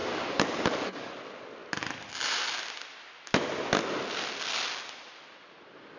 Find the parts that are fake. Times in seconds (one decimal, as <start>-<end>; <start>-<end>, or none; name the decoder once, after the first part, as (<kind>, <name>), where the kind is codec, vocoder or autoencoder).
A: 0.0-1.1 (codec, DAC)